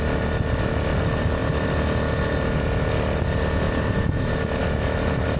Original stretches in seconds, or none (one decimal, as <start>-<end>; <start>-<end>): 0.0-5.4